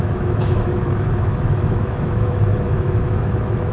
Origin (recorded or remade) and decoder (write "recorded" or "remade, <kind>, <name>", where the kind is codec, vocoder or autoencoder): remade, autoencoder, DAC-VAE